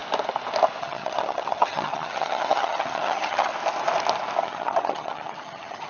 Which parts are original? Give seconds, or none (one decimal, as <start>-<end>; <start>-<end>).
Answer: 0.0-0.8; 3.5-4.4